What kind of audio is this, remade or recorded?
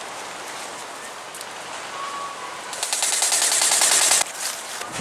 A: recorded